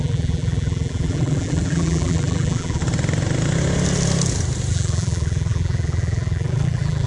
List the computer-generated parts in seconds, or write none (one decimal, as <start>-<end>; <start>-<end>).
0.0-2.8; 4.7-7.1